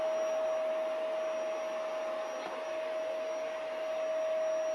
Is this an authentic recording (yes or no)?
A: yes